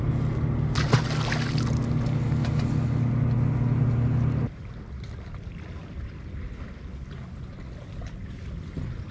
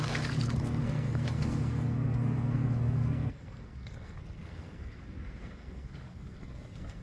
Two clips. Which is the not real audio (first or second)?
second